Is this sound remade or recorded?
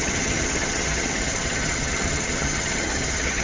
remade